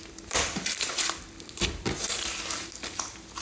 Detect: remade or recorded recorded